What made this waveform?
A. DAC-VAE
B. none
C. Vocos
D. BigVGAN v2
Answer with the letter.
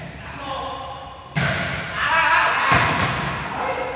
B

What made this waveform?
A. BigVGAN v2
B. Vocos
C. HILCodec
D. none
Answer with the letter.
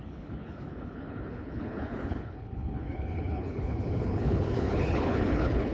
C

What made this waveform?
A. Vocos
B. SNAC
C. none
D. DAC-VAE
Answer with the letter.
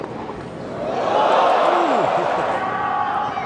C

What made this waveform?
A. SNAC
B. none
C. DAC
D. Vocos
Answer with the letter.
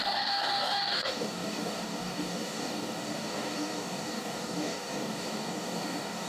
C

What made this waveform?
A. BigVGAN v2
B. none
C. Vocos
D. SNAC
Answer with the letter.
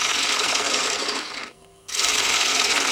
D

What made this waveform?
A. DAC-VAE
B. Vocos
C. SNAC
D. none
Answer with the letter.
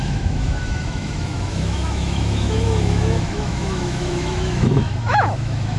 A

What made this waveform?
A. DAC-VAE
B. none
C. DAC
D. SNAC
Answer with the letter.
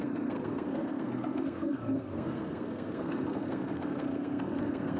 D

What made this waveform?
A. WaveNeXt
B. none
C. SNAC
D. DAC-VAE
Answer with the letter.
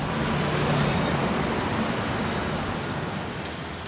B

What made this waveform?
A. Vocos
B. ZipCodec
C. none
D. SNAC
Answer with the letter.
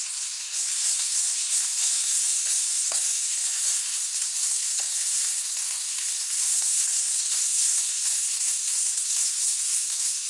D